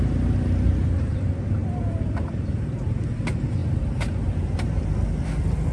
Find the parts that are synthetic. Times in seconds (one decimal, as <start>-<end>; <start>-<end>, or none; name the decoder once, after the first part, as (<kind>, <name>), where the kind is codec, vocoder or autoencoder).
1.6-3.0 (vocoder, BigVGAN v2); 3.6-4.9